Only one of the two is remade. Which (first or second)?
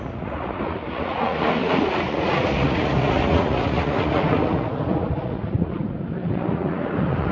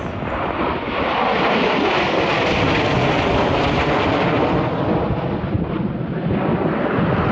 first